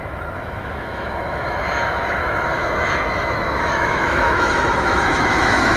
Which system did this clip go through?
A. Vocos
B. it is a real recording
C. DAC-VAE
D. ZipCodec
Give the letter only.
C